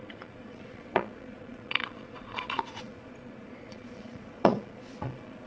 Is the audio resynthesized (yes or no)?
yes